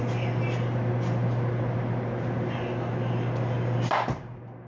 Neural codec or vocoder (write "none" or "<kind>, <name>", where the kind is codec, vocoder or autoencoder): none